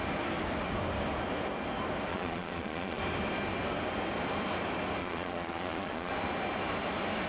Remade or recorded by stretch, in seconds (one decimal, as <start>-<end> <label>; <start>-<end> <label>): 0.0-2.1 recorded; 2.1-3.0 remade; 3.0-5.0 recorded; 5.0-6.1 remade; 6.1-7.3 recorded

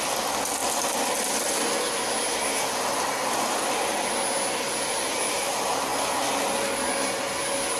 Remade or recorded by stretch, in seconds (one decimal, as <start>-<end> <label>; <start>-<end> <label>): 0.0-7.8 recorded